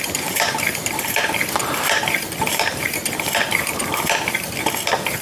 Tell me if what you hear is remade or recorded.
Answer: remade